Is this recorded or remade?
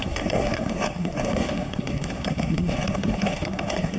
remade